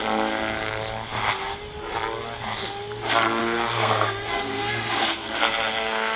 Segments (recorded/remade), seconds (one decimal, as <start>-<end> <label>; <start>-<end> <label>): 0.0-3.4 recorded; 3.4-6.2 remade